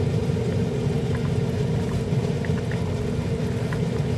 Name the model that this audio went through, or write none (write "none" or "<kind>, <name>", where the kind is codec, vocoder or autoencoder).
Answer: none